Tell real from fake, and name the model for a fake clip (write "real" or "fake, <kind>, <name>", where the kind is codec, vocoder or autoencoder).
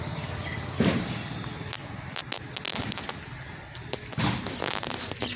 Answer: real